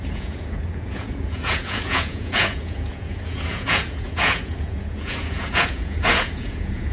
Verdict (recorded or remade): remade